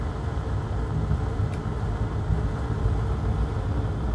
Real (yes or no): yes